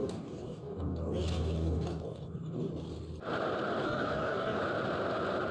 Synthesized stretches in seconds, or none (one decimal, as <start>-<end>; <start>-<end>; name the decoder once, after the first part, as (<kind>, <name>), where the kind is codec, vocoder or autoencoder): 0.0-2.7 (codec, DAC); 3.8-4.6